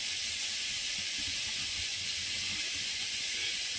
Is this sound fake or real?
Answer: fake